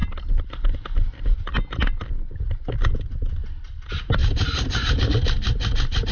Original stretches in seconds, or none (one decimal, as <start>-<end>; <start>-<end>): 0.0-4.2; 5.1-6.1